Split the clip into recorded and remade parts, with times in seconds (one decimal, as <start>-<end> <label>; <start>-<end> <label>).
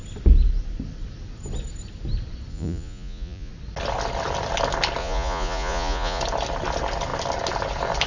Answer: 0.0-2.5 recorded; 2.5-3.5 remade; 3.5-5.0 recorded; 5.0-6.2 remade; 6.2-8.1 recorded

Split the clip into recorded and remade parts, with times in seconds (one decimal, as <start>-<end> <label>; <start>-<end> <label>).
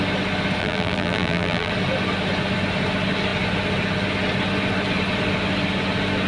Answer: 0.0-0.6 recorded; 0.6-1.7 remade; 1.7-6.3 recorded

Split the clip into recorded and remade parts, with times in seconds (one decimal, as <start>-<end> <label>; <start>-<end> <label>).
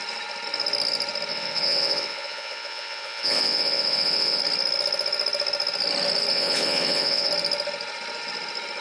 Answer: 0.0-1.3 recorded; 1.3-4.4 remade; 4.4-6.3 recorded; 6.3-7.3 remade; 7.3-8.8 recorded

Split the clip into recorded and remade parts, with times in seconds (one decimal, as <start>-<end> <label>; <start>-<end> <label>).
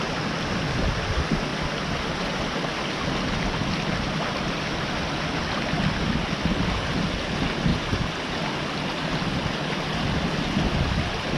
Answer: 0.0-11.4 recorded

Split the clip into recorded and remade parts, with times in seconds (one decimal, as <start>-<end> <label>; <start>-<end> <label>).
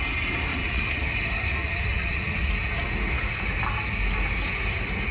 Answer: 0.0-0.5 recorded; 0.5-1.1 remade; 1.1-1.5 recorded; 1.5-2.5 remade; 2.5-5.1 recorded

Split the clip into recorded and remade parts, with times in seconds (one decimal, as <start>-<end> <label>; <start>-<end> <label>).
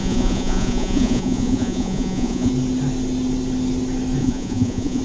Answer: 0.0-2.5 remade; 2.5-4.2 recorded; 4.2-5.0 remade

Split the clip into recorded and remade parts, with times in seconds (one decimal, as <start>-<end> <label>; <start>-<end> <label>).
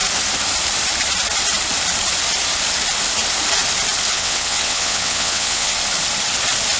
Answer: 0.0-4.1 recorded; 4.1-5.7 remade; 5.7-6.8 recorded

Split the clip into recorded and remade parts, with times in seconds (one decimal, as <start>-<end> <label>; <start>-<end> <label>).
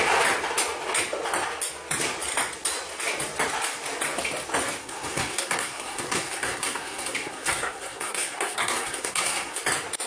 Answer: 0.0-4.8 recorded; 4.8-9.6 remade; 9.6-10.1 recorded